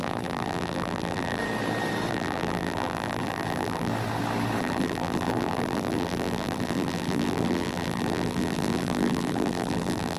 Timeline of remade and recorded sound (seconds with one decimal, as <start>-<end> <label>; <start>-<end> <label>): 0.0-1.4 remade; 1.4-2.1 recorded; 2.1-3.9 remade; 3.9-4.6 recorded; 4.6-10.2 remade